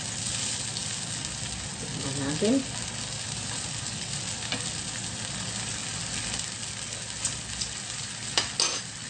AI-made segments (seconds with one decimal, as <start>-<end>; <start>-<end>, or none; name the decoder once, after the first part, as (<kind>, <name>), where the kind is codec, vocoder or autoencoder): none